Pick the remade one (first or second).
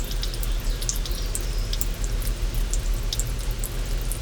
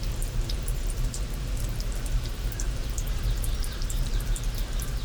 second